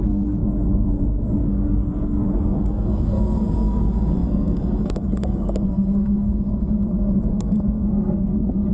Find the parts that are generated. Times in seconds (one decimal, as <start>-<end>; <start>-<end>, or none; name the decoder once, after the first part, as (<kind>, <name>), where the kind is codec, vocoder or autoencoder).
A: 0.0-8.7 (codec, SNAC)